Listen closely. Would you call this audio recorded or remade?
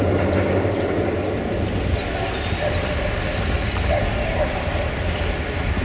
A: recorded